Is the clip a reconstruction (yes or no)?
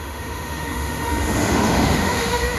yes